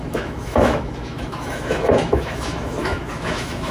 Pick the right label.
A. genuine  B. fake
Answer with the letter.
B